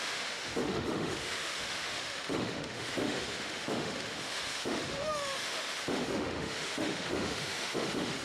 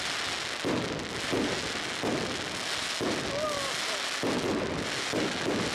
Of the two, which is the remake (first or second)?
first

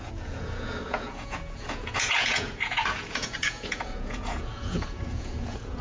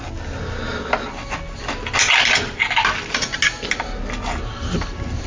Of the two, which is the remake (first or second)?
first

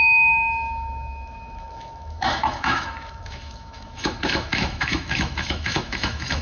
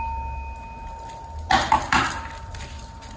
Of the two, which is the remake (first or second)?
first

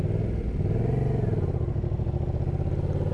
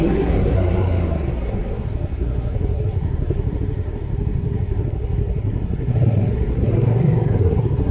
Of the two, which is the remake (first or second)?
second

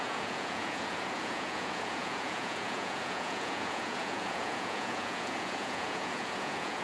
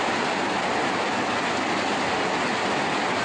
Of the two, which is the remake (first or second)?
first